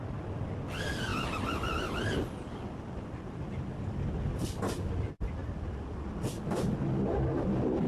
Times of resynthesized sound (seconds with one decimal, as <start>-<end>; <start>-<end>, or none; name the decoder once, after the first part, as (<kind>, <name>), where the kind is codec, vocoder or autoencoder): none